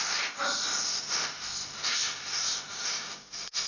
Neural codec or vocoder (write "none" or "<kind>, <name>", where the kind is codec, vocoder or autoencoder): none